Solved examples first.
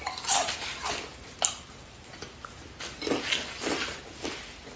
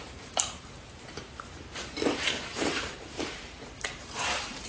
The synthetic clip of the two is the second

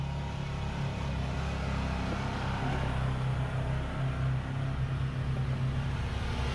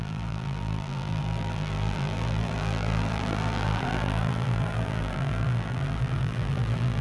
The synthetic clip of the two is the second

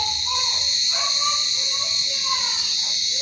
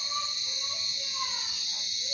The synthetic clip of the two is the first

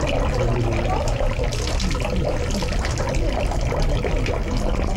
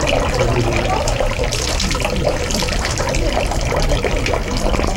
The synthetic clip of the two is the second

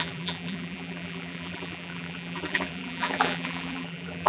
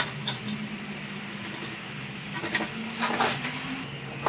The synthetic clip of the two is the first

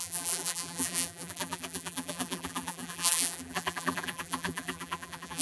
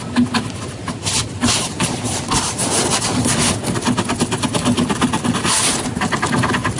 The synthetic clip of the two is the first